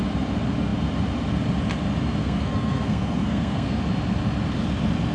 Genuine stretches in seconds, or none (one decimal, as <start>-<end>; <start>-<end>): 0.0-2.2; 3.8-5.1